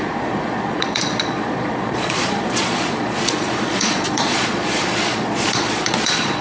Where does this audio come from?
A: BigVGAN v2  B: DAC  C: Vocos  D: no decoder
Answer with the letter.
C